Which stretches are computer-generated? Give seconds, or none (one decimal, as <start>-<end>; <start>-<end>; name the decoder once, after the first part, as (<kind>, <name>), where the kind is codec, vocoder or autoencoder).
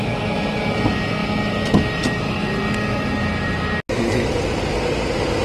none